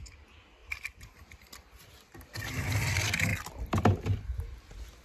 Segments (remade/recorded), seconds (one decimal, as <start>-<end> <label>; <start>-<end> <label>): 0.0-0.6 recorded; 0.6-2.9 remade; 2.9-3.3 recorded; 3.3-3.8 remade; 3.8-5.0 recorded

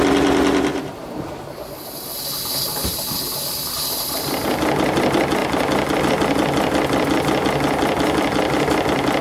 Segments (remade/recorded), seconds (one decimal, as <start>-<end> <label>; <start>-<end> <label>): 0.0-0.7 recorded; 0.7-1.4 remade; 1.4-9.2 recorded